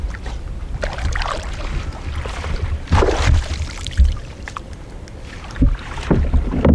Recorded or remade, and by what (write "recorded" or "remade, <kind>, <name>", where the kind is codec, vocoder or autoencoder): remade, vocoder, BigVGAN v2